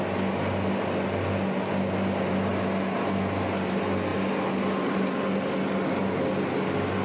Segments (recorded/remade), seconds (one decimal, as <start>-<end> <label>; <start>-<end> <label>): 0.0-7.0 recorded